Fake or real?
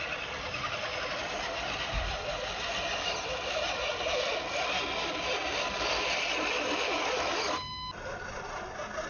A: real